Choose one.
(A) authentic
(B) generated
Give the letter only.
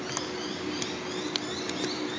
A